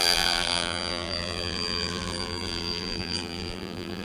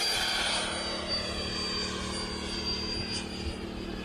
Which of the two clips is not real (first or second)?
first